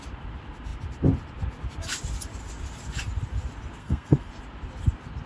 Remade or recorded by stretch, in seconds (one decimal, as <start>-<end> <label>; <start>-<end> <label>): 0.0-3.8 recorded; 3.8-4.3 remade; 4.3-5.3 recorded